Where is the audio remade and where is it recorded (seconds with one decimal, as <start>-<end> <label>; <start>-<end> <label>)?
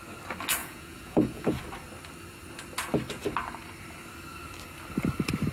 0.0-0.6 recorded; 0.6-1.6 remade; 1.6-5.5 recorded